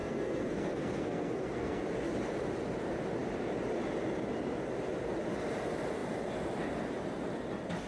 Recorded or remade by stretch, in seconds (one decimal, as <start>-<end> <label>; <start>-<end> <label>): 0.0-1.8 remade; 1.8-7.9 recorded